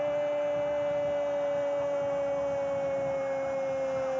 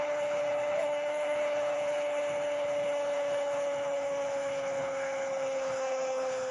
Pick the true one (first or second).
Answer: first